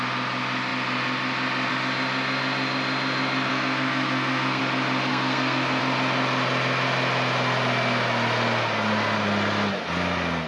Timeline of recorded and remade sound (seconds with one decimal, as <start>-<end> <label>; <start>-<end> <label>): 0.0-3.5 recorded; 3.5-4.6 remade; 4.6-5.1 recorded; 5.1-5.8 remade; 5.8-10.5 recorded